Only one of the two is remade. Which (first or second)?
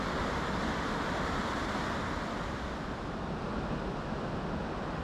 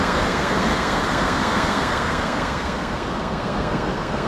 second